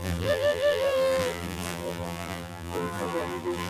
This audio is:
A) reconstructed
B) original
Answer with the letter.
A